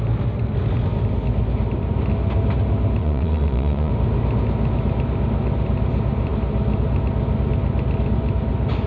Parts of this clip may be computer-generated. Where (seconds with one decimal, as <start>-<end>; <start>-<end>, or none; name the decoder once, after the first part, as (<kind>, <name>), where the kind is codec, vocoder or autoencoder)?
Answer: 3.0-3.9 (vocoder, Vocos)

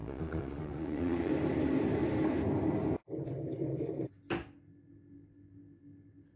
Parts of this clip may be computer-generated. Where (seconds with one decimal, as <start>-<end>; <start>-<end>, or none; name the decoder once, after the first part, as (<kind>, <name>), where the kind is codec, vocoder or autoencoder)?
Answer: 0.0-1.3 (vocoder, Vocos)